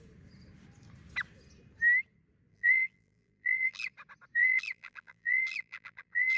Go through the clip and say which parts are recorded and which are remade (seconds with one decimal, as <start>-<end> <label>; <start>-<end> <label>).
0.0-2.5 recorded; 2.5-3.9 remade; 3.9-4.4 recorded; 4.4-6.4 remade